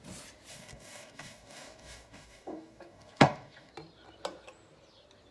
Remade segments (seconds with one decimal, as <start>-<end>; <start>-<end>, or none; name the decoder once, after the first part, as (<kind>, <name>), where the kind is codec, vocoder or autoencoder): 0.5-3.7 (codec, DAC)